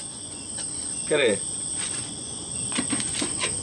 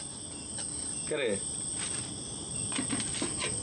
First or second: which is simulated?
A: first